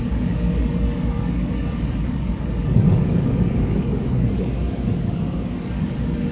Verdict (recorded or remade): remade